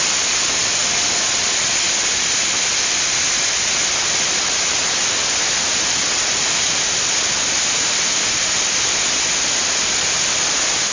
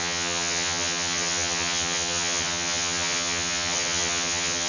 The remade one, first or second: second